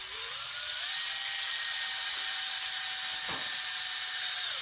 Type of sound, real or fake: real